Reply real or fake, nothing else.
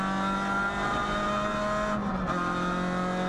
real